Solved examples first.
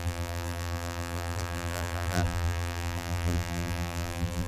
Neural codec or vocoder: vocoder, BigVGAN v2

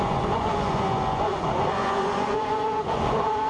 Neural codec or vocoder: vocoder, Vocos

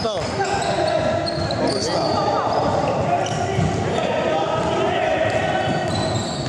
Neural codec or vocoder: none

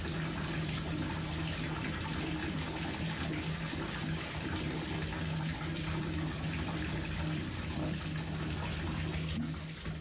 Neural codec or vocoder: none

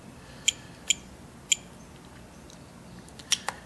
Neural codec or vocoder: none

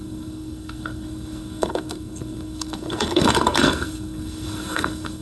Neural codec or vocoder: codec, SNAC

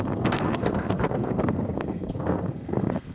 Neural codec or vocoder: codec, SNAC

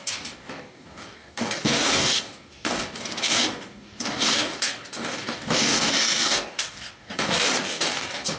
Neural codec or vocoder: codec, DAC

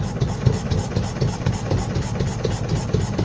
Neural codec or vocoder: none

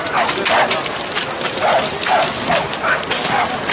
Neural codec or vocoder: none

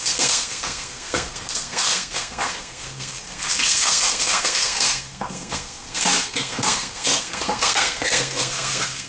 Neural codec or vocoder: codec, SNAC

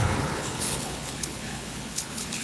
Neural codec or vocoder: codec, HILCodec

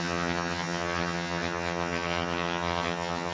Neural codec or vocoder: vocoder, HiFi-GAN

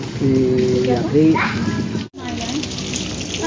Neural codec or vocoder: none